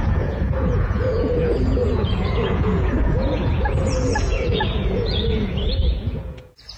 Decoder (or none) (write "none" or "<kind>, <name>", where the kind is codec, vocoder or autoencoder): vocoder, Vocos